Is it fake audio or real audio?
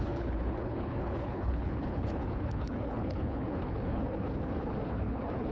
fake